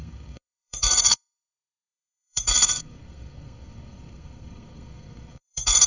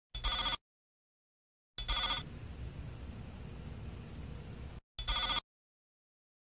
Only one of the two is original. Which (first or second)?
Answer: second